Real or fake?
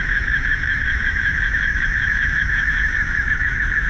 fake